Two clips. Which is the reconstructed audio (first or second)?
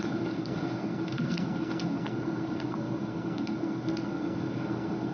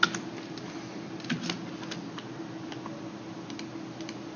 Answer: first